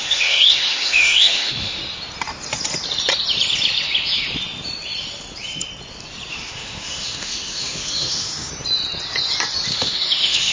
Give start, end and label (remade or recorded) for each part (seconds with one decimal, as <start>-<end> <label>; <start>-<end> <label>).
0.0-1.8 remade; 1.8-6.3 recorded; 6.3-8.5 remade; 8.5-9.7 recorded; 9.7-10.5 remade